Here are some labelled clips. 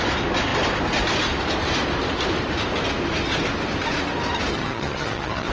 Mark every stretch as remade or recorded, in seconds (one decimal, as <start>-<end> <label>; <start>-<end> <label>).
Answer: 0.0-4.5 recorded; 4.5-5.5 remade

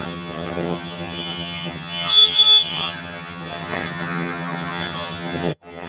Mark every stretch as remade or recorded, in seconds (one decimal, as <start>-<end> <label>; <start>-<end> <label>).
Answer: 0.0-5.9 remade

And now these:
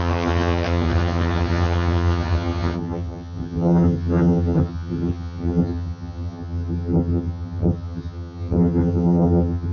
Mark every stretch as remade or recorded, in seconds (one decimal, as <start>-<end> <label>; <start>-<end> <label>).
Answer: 0.0-9.7 remade

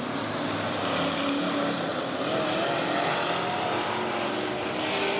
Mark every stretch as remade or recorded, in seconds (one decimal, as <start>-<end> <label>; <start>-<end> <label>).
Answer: 0.0-5.2 recorded

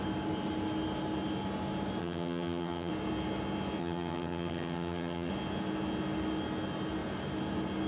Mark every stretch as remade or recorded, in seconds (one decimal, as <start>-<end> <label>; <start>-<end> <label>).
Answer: 0.0-2.0 recorded; 2.0-2.9 remade; 2.9-3.8 recorded; 3.8-5.3 remade; 5.3-7.9 recorded

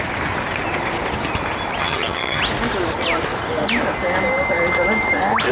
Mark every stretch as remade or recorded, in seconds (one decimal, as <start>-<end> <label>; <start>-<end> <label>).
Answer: 0.0-1.8 recorded; 1.8-2.4 remade; 2.4-5.5 recorded